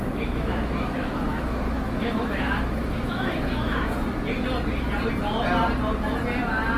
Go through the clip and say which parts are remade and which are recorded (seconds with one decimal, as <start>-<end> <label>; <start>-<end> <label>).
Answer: 0.0-3.9 remade; 3.9-6.8 recorded